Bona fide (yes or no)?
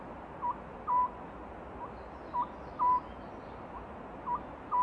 yes